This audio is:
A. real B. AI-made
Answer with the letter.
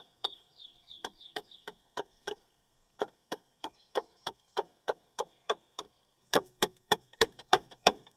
B